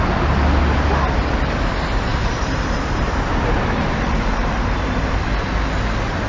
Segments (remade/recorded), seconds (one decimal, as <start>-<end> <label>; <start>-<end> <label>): 0.0-2.1 recorded; 2.1-5.5 remade; 5.5-6.3 recorded